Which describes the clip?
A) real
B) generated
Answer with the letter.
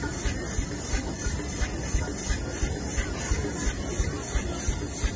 A